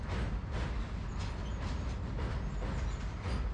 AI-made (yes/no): no